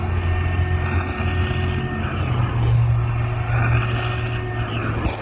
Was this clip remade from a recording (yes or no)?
no